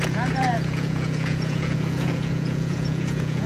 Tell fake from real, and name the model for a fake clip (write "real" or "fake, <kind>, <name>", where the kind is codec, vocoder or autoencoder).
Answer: fake, vocoder, Vocos